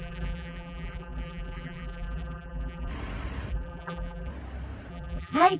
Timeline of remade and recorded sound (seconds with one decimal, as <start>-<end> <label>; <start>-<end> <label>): 0.0-2.9 remade; 2.9-3.5 recorded; 3.5-4.3 remade; 4.3-4.9 recorded; 4.9-5.6 remade